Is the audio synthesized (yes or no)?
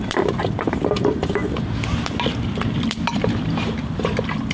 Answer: yes